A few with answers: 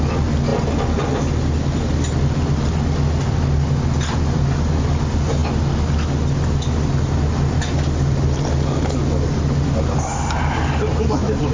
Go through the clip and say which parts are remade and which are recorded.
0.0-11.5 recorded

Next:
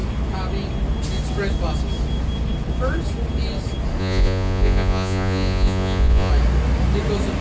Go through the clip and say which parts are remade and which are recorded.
0.0-4.0 recorded; 4.0-6.3 remade; 6.3-7.4 recorded

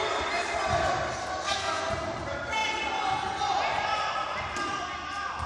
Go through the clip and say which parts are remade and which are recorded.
0.0-1.2 recorded; 1.2-1.9 remade; 1.9-5.5 recorded

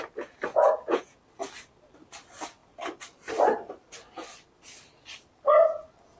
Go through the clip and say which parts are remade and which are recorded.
0.0-0.5 recorded; 0.5-1.2 remade; 1.2-6.2 recorded

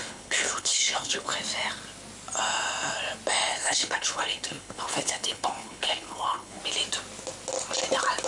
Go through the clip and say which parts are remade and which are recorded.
0.0-1.3 remade; 1.3-3.5 recorded; 3.5-6.6 remade; 6.6-8.3 recorded